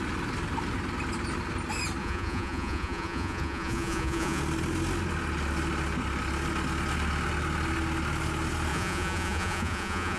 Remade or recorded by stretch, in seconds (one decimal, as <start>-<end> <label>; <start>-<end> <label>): 0.0-2.0 recorded; 2.0-4.4 remade; 4.4-8.7 recorded; 8.7-10.2 remade